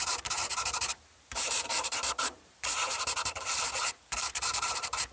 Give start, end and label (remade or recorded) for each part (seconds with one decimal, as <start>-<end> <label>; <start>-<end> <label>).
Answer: 0.0-5.1 remade